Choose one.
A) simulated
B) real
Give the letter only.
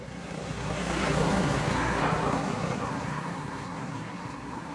A